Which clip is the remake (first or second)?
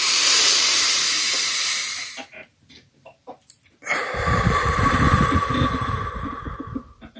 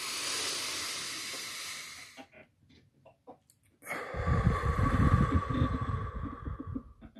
first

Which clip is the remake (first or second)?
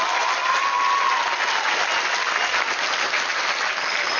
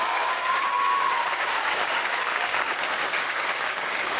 second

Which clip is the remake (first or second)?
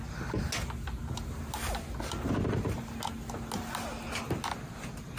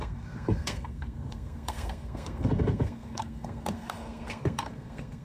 second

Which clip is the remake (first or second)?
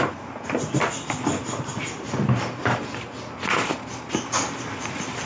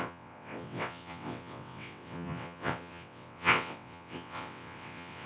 second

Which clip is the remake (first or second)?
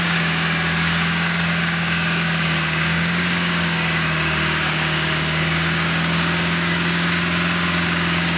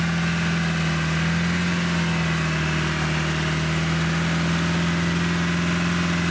first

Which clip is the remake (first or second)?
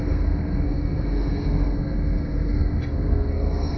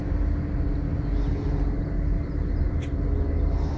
first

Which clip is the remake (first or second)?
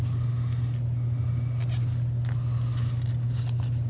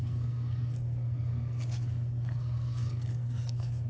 second